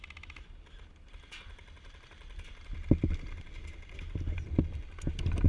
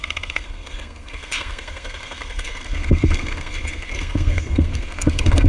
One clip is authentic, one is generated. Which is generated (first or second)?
second